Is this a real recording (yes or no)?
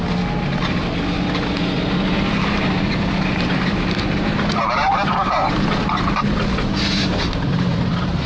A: no